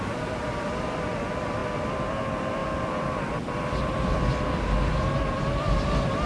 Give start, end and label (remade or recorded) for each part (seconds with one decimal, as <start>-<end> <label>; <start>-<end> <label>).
0.0-6.3 remade

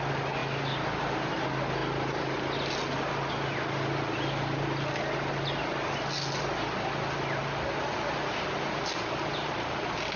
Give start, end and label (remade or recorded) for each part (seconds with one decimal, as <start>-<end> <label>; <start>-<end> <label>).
0.0-10.2 recorded